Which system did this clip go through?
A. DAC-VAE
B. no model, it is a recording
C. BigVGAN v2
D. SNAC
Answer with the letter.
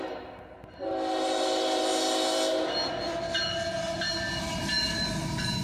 B